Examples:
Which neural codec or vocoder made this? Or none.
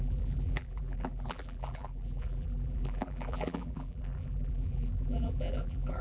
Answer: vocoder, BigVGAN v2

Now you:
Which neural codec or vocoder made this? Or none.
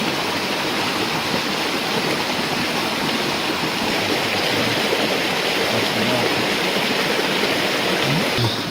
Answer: none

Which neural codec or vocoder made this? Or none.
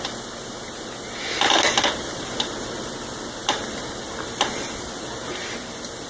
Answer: none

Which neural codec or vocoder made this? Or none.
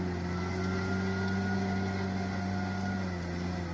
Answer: none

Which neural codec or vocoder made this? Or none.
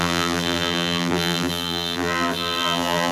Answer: vocoder, BigVGAN v2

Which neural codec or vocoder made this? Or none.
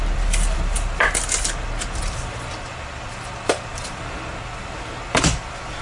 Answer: vocoder, BigVGAN v2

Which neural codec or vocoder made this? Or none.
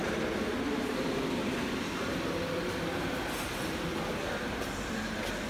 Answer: none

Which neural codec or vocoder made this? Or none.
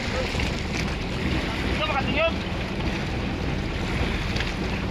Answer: none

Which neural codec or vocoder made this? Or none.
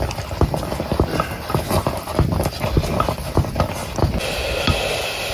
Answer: none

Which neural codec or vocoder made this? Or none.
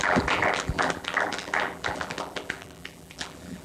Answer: vocoder, BigVGAN v2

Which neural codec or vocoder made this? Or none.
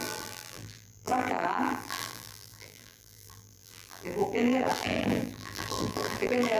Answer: vocoder, BigVGAN v2